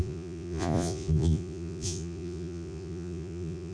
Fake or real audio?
fake